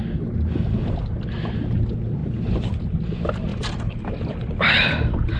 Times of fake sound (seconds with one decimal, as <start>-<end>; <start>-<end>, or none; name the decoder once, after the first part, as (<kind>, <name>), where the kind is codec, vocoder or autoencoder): 2.2-2.8 (vocoder, BigVGAN v2); 3.5-5.4